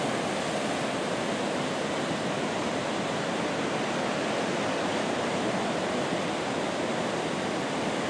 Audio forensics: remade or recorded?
recorded